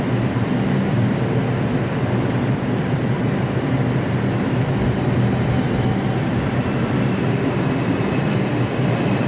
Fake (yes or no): yes